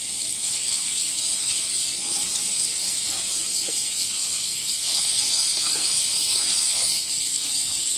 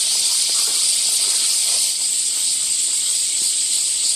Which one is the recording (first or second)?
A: second